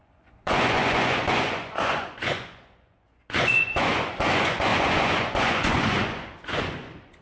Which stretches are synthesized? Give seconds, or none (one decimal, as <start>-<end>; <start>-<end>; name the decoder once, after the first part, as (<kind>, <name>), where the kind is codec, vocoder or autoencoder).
0.0-7.2 (vocoder, Vocos)